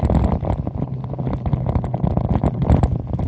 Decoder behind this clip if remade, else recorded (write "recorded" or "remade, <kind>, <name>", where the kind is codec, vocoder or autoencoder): recorded